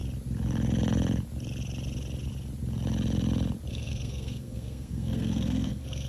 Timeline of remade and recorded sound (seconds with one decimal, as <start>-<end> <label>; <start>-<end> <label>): 0.0-3.7 recorded; 3.7-6.1 remade